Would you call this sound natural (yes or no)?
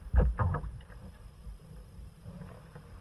yes